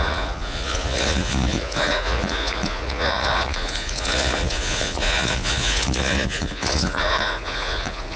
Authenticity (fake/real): fake